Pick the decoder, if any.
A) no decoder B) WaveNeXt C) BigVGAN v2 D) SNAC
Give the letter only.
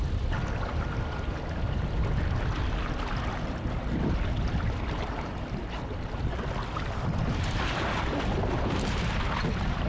A